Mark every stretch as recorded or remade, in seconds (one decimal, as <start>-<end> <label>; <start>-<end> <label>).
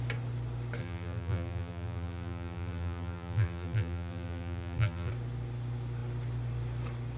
0.0-0.8 recorded; 0.8-5.1 remade; 5.1-7.2 recorded